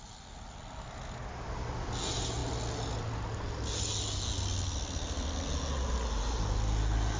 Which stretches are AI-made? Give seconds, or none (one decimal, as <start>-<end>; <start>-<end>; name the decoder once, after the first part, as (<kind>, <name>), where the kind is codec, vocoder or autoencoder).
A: none

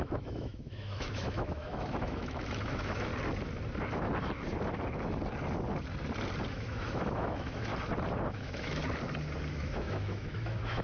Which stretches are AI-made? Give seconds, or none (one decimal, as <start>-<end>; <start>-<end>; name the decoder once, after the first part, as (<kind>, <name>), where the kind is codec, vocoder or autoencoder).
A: 0.0-3.1 (autoencoder, DAC-VAE); 6.5-7.7; 8.3-8.8; 9.5-10.8

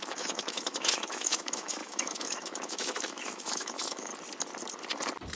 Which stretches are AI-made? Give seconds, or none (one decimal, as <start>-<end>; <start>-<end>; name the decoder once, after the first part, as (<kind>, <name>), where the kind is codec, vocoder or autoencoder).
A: 0.0-4.1 (autoencoder, DAC-VAE)

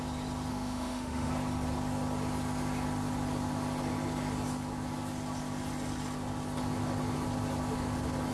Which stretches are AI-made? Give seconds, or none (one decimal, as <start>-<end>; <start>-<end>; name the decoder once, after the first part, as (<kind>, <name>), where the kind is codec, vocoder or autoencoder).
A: 0.5-1.3 (autoencoder, DAC-VAE)

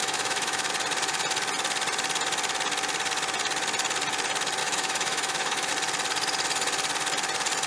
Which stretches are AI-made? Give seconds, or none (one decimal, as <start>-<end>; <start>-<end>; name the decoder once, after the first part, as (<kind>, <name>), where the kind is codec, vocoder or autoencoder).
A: 0.0-0.7 (autoencoder, DAC-VAE); 4.6-5.7